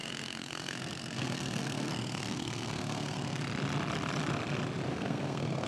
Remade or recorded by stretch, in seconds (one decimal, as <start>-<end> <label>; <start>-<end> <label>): 0.0-3.4 remade; 3.4-4.9 recorded; 4.9-5.7 remade